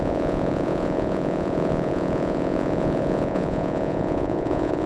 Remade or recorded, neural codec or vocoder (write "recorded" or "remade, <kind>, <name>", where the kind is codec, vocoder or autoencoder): remade, vocoder, Vocos